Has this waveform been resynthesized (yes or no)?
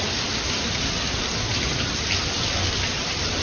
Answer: no